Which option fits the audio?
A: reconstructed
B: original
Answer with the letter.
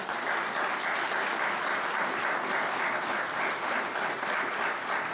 B